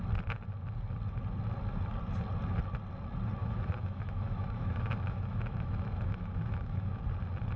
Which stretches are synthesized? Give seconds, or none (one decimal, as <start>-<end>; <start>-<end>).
3.4-7.0